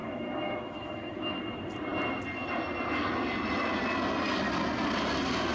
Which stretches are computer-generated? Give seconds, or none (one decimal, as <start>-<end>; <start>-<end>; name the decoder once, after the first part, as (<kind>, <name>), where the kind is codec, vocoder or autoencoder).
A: 0.0-1.4 (autoencoder, DAC-VAE)

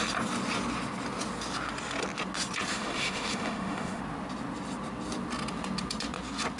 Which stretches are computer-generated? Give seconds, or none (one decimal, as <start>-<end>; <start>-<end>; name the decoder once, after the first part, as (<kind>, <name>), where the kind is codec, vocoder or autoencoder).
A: 2.7-4.0 (autoencoder, DAC-VAE)

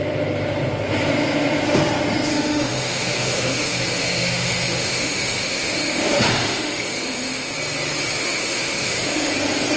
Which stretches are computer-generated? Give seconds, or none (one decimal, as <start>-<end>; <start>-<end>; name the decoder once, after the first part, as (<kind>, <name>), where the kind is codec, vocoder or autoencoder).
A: 2.3-7.5 (autoencoder, DAC-VAE); 8.2-9.3

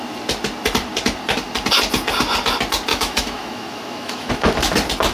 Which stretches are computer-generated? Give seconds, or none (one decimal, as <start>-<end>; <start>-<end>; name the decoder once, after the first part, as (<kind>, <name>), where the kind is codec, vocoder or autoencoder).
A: 2.9-4.3 (autoencoder, DAC-VAE)

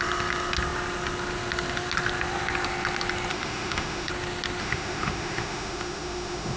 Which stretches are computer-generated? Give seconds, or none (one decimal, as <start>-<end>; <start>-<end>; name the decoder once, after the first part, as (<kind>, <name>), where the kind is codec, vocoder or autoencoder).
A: 3.3-4.1 (autoencoder, DAC-VAE); 4.6-6.6

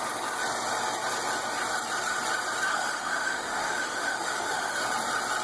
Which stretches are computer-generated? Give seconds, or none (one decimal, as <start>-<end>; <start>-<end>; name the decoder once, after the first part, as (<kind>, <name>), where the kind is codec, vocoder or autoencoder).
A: 2.7-4.8 (autoencoder, DAC-VAE)

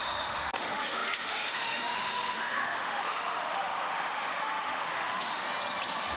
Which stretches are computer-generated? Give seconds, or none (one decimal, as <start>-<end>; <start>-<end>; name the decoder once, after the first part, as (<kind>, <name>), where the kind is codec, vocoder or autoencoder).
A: 0.0-5.4 (autoencoder, DAC-VAE)